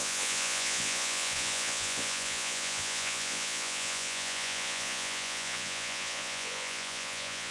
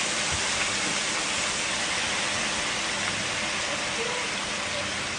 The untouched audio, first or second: second